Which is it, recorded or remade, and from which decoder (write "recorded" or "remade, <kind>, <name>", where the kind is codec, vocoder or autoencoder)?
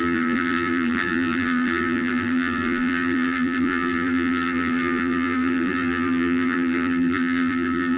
remade, vocoder, BigVGAN v2